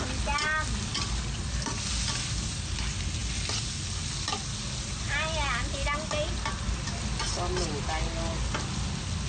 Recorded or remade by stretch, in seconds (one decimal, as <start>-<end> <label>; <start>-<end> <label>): 0.0-9.3 recorded